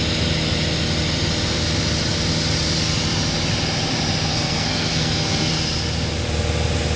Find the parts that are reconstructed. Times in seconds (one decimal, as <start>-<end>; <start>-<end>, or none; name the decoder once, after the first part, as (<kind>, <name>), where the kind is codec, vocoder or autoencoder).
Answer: 4.3-5.5 (codec, SNAC)